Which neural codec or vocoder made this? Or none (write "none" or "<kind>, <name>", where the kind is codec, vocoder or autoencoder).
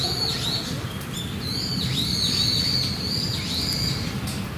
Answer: none